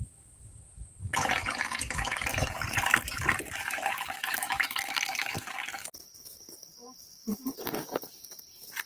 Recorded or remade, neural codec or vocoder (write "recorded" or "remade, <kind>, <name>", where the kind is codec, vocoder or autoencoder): remade, codec, DAC